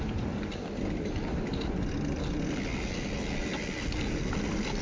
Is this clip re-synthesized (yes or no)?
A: no